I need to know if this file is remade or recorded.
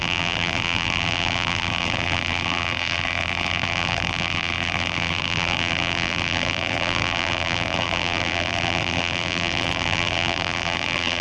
remade